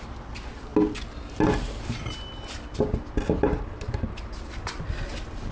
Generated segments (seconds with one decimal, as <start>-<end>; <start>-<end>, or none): none